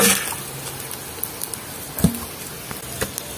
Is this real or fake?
real